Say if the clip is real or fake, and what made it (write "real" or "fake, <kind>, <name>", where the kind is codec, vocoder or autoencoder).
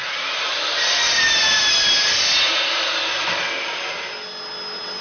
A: real